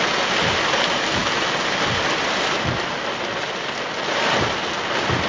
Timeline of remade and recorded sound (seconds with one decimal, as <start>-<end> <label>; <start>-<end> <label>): 0.0-5.3 recorded